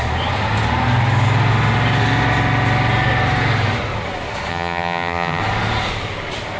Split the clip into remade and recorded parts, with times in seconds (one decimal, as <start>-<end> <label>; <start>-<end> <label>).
0.0-4.5 recorded; 4.5-5.4 remade; 5.4-6.6 recorded